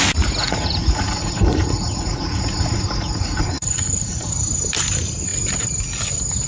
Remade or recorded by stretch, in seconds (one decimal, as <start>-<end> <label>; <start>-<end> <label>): 0.0-0.4 recorded; 0.4-4.3 remade; 4.3-6.5 recorded